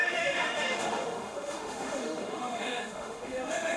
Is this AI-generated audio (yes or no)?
yes